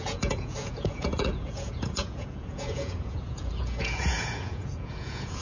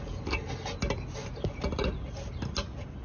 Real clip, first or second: second